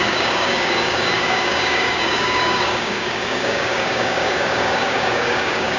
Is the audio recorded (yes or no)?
no